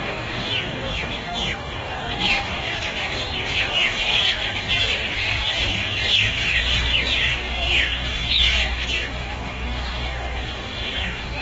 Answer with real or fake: fake